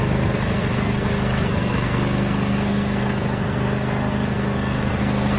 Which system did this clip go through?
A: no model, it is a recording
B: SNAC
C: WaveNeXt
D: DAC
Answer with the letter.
B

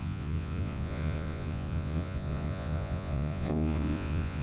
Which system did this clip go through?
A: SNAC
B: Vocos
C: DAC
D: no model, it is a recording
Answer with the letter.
B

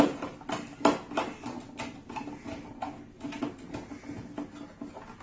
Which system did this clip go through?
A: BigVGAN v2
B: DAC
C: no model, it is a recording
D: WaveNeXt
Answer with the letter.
C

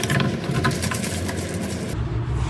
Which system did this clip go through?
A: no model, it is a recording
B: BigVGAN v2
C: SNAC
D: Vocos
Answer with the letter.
A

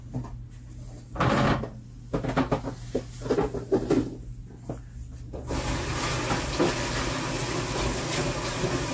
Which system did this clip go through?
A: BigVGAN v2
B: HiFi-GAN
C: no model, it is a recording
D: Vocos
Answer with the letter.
C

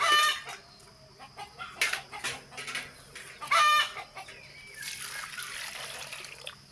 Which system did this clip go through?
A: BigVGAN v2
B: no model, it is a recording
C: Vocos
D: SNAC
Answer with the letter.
B